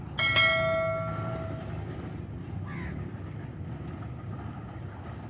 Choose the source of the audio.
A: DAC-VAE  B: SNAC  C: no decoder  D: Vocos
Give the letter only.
C